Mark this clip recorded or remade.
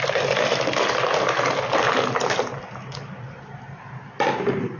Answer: recorded